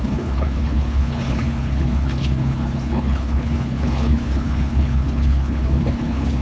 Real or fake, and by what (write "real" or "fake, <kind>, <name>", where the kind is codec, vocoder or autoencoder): fake, codec, HILCodec